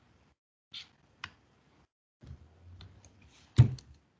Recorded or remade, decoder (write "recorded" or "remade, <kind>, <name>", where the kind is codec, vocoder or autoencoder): recorded